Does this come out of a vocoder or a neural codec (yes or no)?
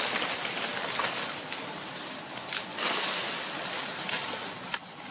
no